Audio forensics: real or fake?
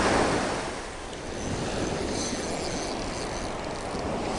real